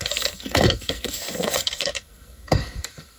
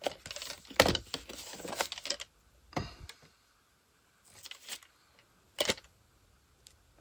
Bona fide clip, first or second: second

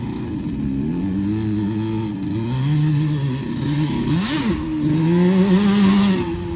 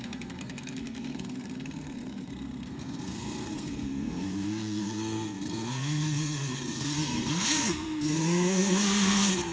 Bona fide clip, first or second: first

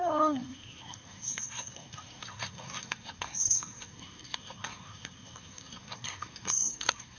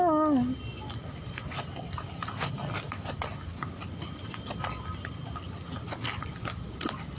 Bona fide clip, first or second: second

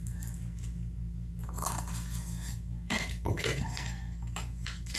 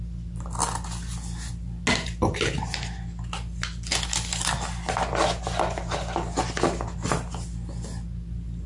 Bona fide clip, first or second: second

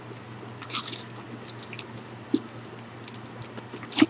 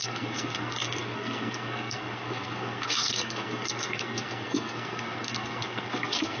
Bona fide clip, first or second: first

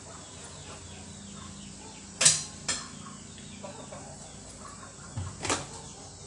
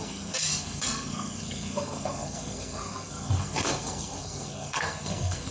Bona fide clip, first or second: first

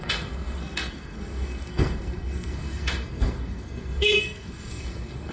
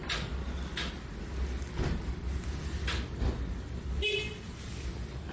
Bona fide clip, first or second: second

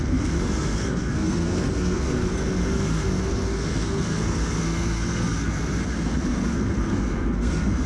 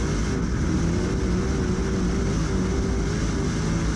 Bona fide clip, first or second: second